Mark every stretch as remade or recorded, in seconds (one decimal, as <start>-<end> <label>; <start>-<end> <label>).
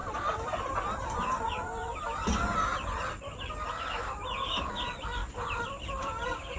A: 0.0-3.5 remade; 3.5-5.2 recorded; 5.2-6.6 remade